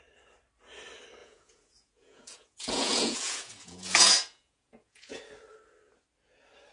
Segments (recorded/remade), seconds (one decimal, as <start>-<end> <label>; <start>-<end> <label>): 0.0-1.2 recorded; 1.2-5.2 remade; 5.2-6.7 recorded